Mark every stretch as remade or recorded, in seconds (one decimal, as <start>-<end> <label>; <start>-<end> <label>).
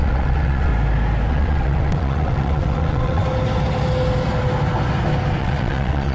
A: 0.0-0.7 remade; 0.7-1.3 recorded; 1.3-3.2 remade; 3.2-5.4 recorded; 5.4-6.1 remade